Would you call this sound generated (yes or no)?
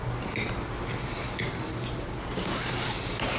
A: no